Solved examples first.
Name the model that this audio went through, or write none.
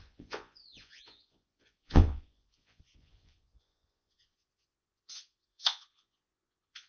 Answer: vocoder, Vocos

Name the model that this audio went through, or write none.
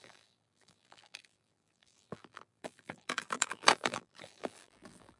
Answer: vocoder, BigVGAN v2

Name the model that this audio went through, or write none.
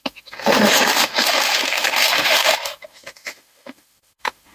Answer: autoencoder, DAC-VAE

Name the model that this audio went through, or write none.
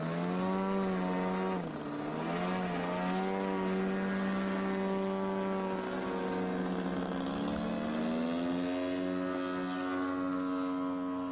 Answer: none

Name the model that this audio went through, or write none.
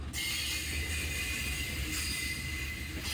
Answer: none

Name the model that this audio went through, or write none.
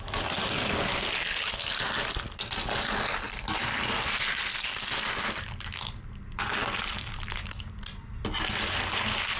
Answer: none